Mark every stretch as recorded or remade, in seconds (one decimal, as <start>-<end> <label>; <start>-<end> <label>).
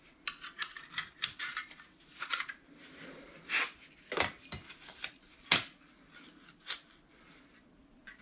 0.0-1.4 recorded; 1.4-3.6 remade; 3.6-8.2 recorded